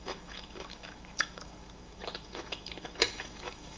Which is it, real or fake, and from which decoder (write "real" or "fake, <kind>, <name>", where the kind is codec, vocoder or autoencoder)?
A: fake, autoencoder, DAC-VAE